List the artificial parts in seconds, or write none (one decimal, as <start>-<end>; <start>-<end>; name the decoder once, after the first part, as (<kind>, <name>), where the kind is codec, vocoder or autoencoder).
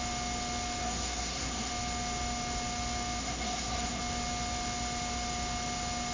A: 0.8-1.7 (codec, SNAC); 3.2-4.0